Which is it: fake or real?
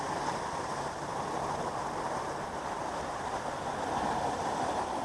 real